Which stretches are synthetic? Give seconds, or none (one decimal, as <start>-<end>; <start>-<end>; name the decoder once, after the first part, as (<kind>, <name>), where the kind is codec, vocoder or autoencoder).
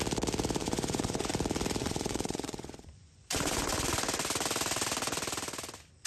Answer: 0.6-1.3 (vocoder, Vocos); 1.8-3.9